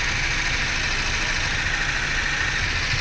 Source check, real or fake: real